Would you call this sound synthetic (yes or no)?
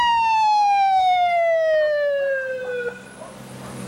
no